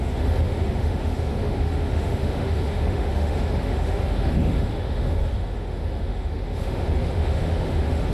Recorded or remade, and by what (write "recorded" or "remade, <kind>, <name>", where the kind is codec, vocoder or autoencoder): remade, autoencoder, DAC-VAE